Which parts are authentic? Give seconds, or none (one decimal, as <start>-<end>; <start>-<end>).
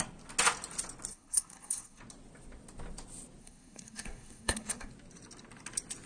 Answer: 0.0-1.1; 2.0-3.4; 4.9-6.1